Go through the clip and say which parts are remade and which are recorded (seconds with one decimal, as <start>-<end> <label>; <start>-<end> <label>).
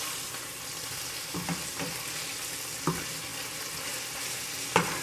0.0-5.0 recorded